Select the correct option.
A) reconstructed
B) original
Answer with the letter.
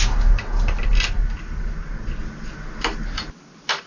B